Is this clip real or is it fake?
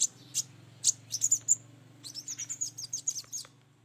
real